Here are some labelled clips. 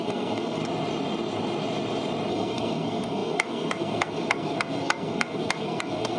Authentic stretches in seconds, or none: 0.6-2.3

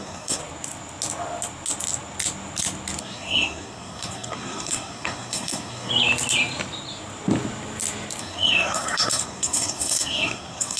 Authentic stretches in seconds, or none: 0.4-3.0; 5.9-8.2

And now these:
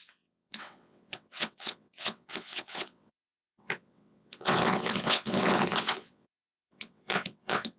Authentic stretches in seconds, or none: none

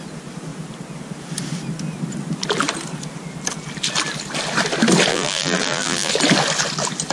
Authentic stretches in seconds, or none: 0.0-5.1; 6.1-7.1

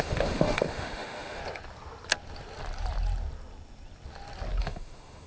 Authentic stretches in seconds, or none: 1.4-4.6

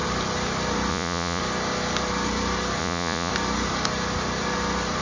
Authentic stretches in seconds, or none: 0.0-0.9; 1.4-2.8; 3.3-5.0